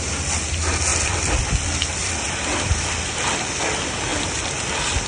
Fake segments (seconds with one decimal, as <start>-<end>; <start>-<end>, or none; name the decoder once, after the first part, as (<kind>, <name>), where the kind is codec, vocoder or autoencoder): 0.9-1.4 (vocoder, BigVGAN v2); 2.0-2.8; 4.1-4.6